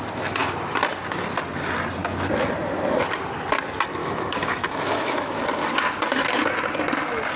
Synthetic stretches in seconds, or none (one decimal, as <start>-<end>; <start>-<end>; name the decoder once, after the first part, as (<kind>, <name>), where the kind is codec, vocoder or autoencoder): 4.0-5.4 (autoencoder, DAC-VAE)